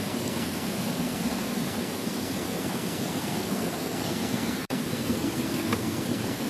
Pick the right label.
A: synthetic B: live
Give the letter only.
A